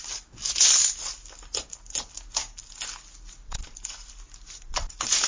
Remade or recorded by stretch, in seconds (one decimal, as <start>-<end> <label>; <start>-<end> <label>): 0.0-5.3 recorded